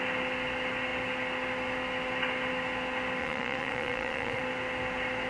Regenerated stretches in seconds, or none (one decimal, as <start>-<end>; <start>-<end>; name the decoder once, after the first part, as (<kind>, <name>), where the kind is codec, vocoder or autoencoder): 3.2-4.4 (vocoder, Vocos)